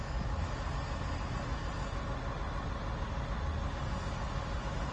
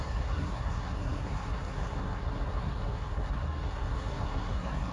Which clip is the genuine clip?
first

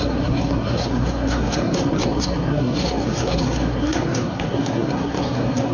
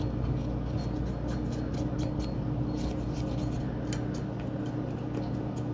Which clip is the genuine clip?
second